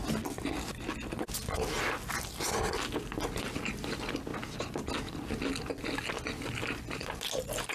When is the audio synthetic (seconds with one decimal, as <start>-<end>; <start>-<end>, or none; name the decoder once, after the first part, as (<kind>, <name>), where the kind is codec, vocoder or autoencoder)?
none